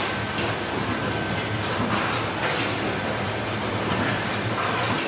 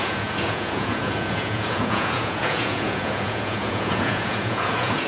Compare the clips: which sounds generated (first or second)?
second